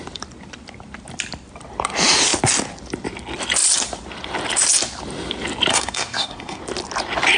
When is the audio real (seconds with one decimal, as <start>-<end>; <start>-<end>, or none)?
0.0-5.7; 6.6-7.4